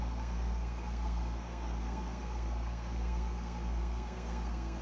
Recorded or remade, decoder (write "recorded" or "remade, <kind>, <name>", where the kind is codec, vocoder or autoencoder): remade, codec, SNAC